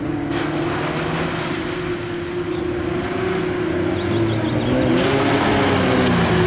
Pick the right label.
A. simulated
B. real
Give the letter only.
B